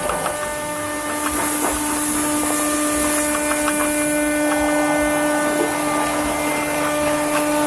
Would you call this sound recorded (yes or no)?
yes